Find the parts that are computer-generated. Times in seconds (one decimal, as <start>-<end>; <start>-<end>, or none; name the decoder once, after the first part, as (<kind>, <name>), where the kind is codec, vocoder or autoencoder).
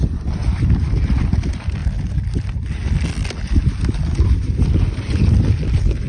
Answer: none